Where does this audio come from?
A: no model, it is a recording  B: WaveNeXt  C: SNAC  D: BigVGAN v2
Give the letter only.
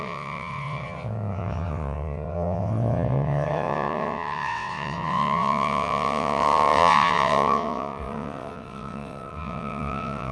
B